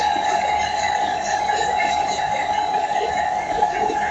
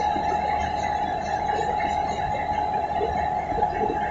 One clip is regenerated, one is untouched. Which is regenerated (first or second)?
first